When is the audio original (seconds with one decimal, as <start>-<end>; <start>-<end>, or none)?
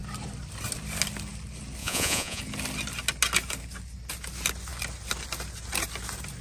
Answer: 0.0-1.8; 2.4-6.4